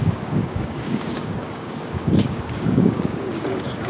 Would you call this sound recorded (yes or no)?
no